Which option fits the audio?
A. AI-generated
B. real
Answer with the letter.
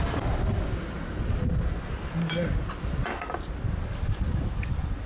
B